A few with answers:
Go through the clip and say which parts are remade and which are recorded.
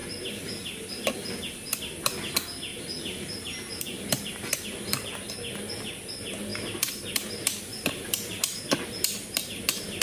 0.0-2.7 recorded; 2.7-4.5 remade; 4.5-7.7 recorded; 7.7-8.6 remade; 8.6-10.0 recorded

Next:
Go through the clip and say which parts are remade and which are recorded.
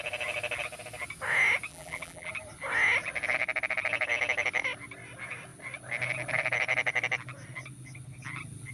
0.0-1.7 recorded; 1.7-2.3 remade; 2.3-8.7 recorded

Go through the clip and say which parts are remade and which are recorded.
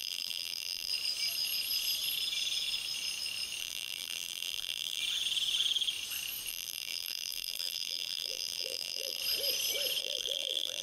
0.0-0.9 remade; 0.9-3.6 recorded; 3.6-5.0 remade; 5.0-6.5 recorded; 6.5-9.2 remade; 9.2-10.0 recorded; 10.0-10.8 remade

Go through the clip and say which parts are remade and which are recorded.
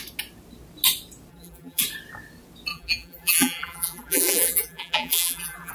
0.0-1.3 recorded; 1.3-1.8 remade; 1.8-2.7 recorded; 2.7-5.7 remade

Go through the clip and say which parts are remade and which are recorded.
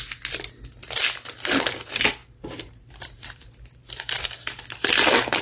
0.0-2.2 recorded; 2.2-5.4 remade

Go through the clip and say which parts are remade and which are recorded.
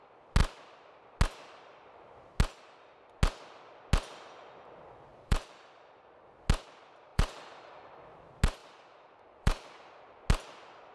0.0-5.1 recorded; 5.1-6.3 remade; 6.3-7.1 recorded; 7.1-8.1 remade; 8.1-8.6 recorded; 8.6-10.0 remade; 10.0-10.9 recorded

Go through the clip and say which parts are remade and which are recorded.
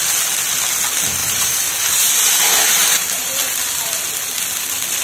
0.0-1.2 recorded; 1.2-2.1 remade; 2.1-2.8 recorded; 2.8-3.3 remade; 3.3-5.0 recorded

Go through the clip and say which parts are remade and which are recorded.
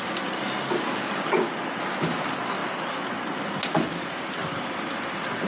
0.0-3.9 recorded; 3.9-4.7 remade; 4.7-5.5 recorded